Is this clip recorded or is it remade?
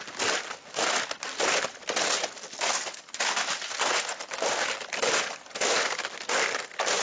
recorded